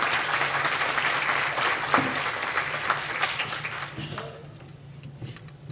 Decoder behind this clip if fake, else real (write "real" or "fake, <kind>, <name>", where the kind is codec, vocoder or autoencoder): real